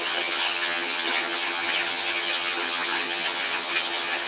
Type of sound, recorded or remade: remade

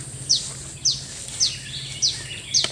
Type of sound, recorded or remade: recorded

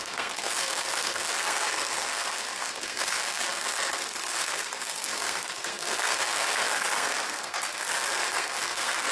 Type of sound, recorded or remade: remade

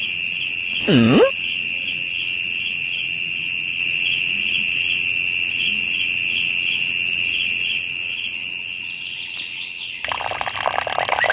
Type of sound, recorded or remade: recorded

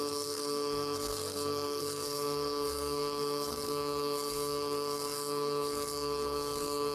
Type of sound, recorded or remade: remade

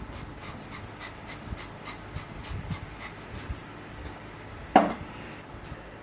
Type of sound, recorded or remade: recorded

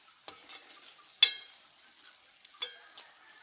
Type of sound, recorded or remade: recorded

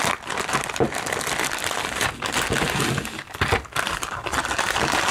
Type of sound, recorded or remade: recorded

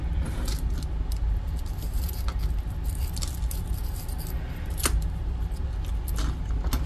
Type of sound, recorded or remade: recorded